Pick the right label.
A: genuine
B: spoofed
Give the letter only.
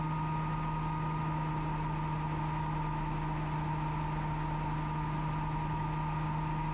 A